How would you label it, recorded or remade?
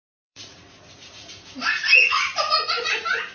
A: remade